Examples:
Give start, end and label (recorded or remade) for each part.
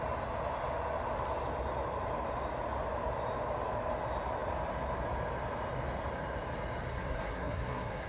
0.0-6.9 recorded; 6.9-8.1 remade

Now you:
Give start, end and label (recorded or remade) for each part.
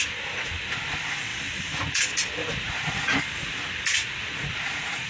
0.0-2.4 recorded; 2.4-3.2 remade; 3.2-3.9 recorded; 3.9-5.1 remade